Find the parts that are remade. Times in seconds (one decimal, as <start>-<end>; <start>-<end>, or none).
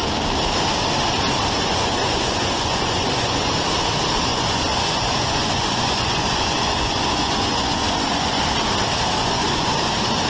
1.6-3.5; 4.3-8.4; 9.2-9.8